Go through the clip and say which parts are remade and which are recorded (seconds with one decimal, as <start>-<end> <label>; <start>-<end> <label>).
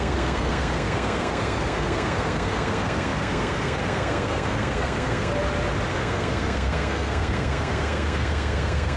0.0-5.3 remade; 5.3-5.9 recorded; 5.9-9.0 remade